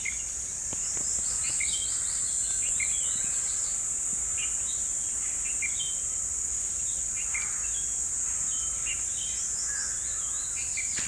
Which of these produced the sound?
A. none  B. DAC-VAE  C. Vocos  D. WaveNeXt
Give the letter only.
A